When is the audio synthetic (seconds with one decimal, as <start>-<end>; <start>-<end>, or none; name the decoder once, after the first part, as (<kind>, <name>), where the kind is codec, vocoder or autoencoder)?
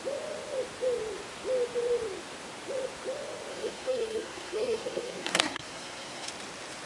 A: 3.5-6.3 (codec, SNAC)